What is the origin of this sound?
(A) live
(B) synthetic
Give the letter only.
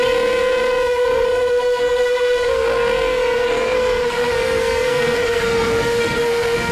B